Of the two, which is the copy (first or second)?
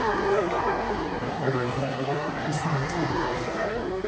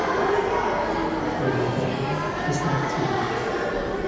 first